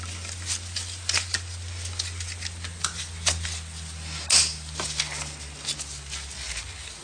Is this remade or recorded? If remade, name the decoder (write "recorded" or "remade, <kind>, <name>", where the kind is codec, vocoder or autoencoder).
recorded